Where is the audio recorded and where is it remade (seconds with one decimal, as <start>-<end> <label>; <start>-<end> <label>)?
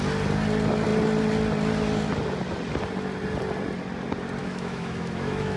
0.0-4.4 recorded; 4.4-5.6 remade